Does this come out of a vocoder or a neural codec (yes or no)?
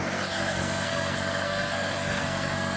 yes